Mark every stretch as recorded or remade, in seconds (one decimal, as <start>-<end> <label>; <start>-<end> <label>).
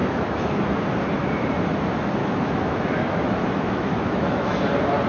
0.0-0.7 remade; 0.7-2.2 recorded; 2.2-4.6 remade; 4.6-5.1 recorded